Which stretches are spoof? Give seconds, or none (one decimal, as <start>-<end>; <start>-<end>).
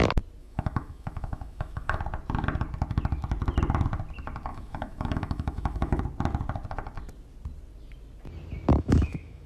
0.4-2.0; 4.5-6.0; 8.7-9.5